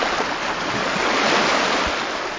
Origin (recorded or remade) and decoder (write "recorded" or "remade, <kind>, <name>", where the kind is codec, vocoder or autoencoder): recorded